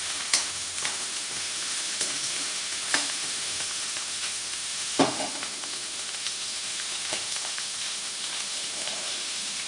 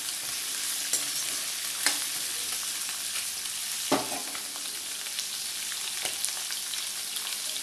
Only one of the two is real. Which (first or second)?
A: second